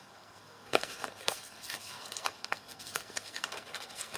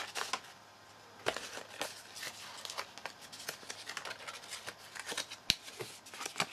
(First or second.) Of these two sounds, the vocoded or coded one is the first